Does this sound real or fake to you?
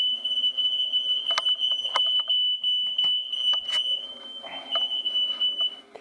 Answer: real